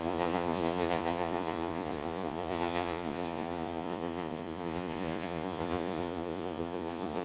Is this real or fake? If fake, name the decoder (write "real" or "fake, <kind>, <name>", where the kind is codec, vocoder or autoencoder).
fake, vocoder, Vocos